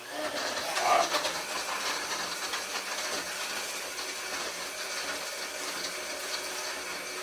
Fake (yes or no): no